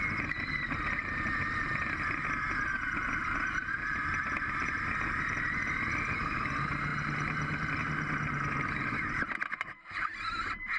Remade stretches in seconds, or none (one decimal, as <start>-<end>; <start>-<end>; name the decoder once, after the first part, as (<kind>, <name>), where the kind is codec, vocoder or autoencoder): none